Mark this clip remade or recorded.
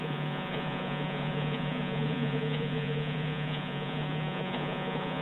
remade